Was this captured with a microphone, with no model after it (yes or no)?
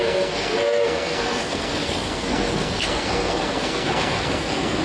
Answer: no